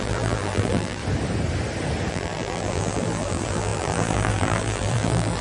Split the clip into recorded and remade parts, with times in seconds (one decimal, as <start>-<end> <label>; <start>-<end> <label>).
0.0-1.0 remade; 1.0-2.1 recorded; 2.1-5.4 remade